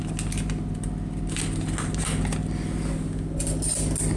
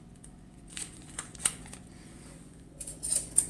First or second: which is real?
first